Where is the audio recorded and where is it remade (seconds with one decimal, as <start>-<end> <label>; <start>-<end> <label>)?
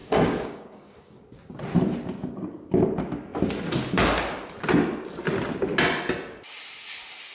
0.0-1.2 remade; 1.2-7.3 recorded